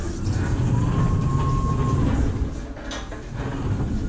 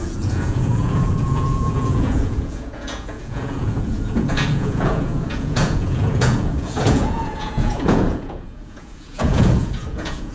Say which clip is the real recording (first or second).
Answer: first